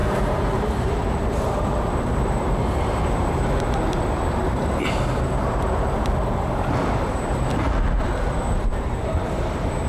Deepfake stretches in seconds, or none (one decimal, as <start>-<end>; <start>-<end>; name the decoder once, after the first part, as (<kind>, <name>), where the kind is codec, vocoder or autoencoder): 0.0-7.3 (vocoder, BigVGAN v2); 8.3-9.9